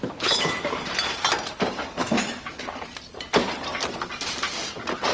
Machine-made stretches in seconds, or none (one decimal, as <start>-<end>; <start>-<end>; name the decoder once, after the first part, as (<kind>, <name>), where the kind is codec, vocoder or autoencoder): 0.0-0.6 (autoencoder, DAC-VAE); 2.0-2.6